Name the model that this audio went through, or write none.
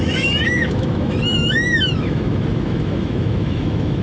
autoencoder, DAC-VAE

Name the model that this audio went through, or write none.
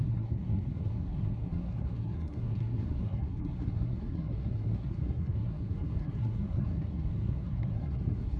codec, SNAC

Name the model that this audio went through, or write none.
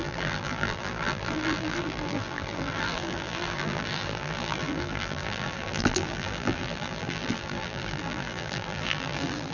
vocoder, BigVGAN v2